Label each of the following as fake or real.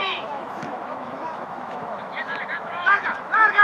fake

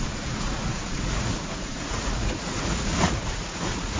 fake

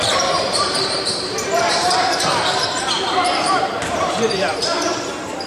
fake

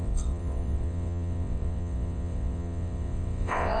fake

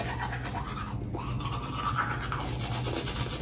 real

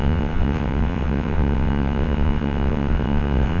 fake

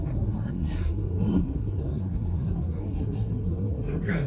fake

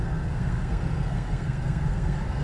fake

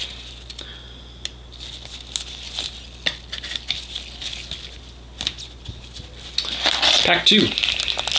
real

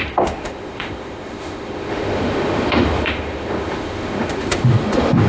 fake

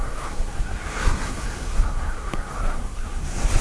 fake